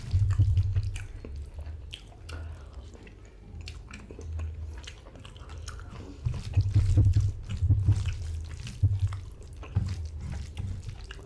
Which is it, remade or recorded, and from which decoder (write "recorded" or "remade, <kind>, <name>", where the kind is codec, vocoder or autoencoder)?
recorded